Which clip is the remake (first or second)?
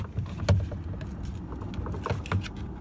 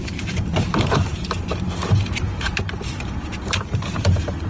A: second